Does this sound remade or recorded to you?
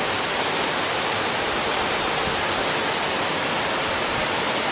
recorded